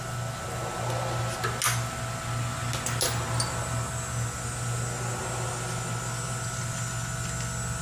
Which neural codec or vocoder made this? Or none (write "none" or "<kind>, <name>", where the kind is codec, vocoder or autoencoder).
none